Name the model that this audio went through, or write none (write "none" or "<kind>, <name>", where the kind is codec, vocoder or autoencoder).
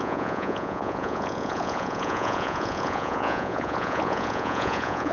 vocoder, Vocos